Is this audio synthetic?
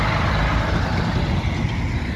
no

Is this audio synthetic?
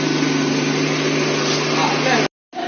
no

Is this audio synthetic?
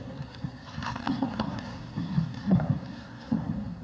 yes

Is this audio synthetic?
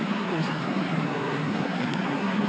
yes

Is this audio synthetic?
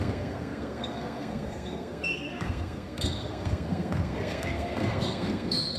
yes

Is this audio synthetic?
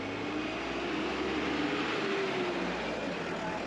no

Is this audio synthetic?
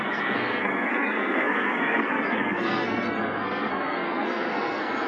yes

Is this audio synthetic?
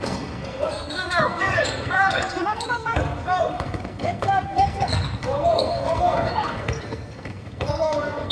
yes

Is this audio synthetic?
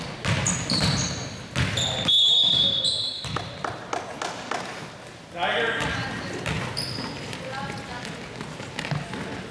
no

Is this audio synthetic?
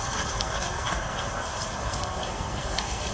yes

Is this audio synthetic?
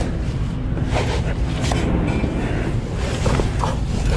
no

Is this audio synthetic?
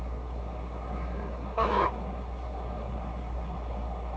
yes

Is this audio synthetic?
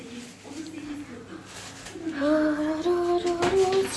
no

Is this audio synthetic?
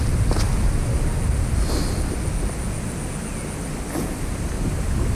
no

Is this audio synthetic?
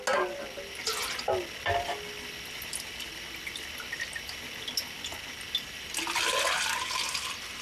no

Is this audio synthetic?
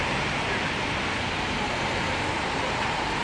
no